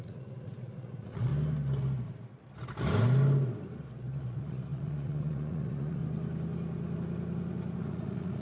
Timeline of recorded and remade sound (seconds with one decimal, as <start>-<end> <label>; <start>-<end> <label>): 0.0-1.3 remade; 1.3-4.2 recorded; 4.2-6.0 remade; 6.0-7.8 recorded; 7.8-8.4 remade